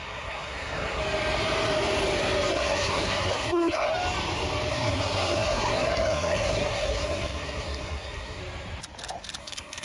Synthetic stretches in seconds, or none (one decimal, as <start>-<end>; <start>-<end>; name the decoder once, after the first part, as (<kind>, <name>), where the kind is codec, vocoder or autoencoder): 0.0-1.0 (codec, SNAC); 2.5-3.9; 4.7-8.4; 9.4-9.8